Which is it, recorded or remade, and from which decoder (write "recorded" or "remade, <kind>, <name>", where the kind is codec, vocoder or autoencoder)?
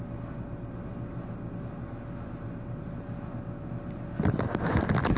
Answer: recorded